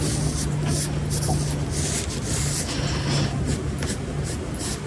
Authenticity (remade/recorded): recorded